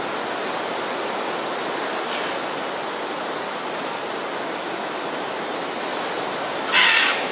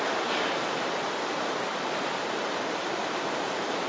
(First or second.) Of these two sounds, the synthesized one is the second